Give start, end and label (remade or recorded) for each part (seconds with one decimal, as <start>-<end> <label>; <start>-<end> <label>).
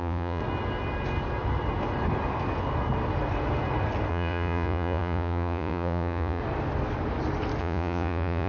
0.0-0.4 remade; 0.4-4.1 recorded; 4.1-6.4 remade; 6.4-7.6 recorded; 7.6-8.5 remade